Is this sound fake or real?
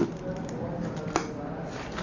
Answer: real